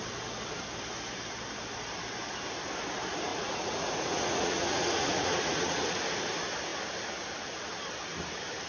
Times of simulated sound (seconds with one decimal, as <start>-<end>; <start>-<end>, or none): 3.3-6.0